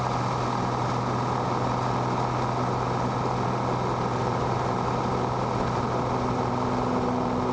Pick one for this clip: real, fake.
real